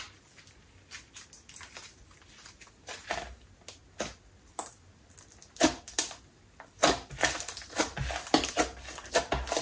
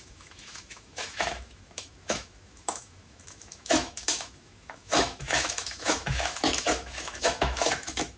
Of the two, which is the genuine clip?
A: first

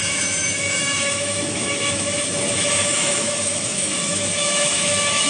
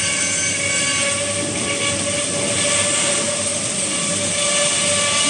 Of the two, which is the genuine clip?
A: second